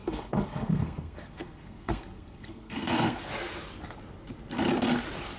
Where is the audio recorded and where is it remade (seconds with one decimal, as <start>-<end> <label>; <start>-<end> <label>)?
0.0-3.2 remade; 3.2-5.4 recorded